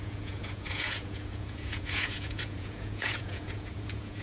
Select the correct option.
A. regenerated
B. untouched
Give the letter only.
A